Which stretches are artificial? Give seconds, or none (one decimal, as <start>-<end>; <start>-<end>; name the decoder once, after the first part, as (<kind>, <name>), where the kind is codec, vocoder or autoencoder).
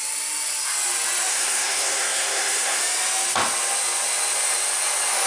1.3-2.8 (codec, SNAC)